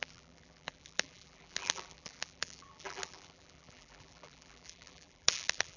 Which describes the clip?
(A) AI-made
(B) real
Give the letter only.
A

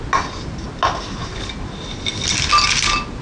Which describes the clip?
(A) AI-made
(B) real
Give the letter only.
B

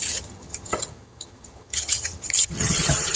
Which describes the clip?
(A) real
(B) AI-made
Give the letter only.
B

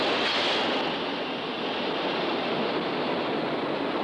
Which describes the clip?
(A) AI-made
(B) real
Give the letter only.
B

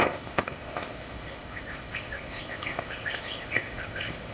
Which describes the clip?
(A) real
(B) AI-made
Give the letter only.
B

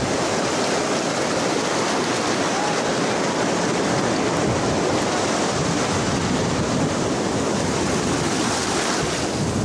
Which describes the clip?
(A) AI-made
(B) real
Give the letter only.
B